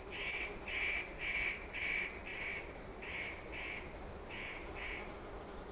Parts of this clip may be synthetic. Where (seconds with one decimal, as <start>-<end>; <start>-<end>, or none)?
none